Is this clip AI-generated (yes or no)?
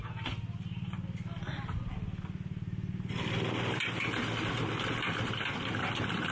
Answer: no